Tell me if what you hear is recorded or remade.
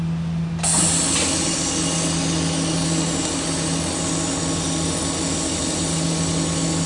recorded